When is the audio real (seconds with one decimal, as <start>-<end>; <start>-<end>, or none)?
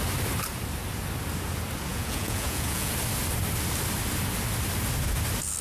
0.0-1.9; 2.9-5.6